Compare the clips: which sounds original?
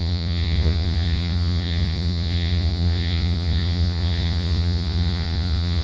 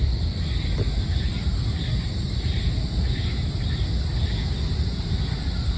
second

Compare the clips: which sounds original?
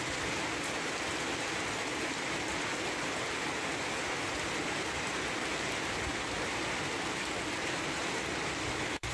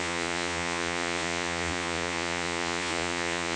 first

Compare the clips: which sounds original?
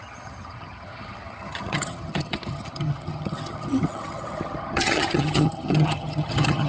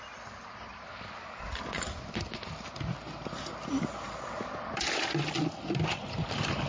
second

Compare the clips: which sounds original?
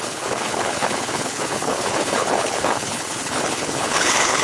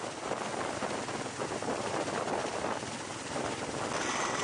second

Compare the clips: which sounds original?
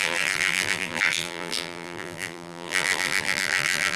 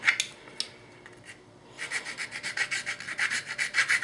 second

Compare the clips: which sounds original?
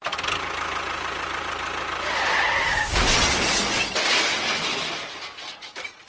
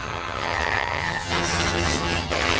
first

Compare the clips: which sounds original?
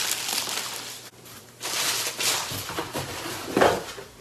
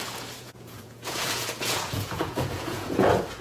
first